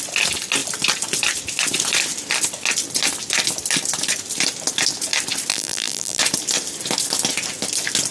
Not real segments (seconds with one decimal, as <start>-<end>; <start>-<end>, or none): 5.5-6.2